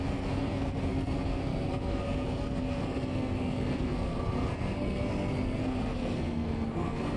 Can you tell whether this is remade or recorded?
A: remade